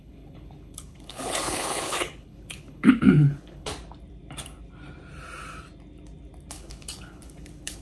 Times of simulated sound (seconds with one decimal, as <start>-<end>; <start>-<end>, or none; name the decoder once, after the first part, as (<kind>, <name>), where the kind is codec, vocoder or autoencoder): 0.0-3.7 (codec, HILCodec); 6.5-7.8